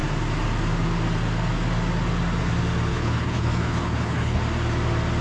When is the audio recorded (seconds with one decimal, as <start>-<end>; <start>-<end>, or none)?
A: 0.0-2.9; 4.4-5.2